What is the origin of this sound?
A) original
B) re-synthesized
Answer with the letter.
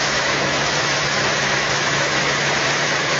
B